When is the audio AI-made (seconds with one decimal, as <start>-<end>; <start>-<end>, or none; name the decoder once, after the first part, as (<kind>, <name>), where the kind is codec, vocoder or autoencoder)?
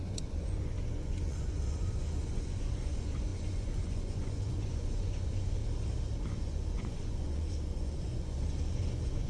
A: 0.0-5.6 (vocoder, Vocos); 6.3-9.3